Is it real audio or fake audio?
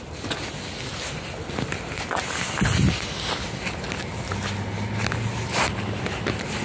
real